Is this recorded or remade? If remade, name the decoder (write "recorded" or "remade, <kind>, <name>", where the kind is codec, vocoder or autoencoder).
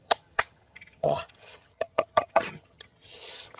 remade, vocoder, HiFi-GAN